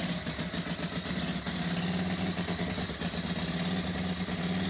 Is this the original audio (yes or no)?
yes